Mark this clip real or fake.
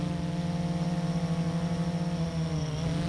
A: real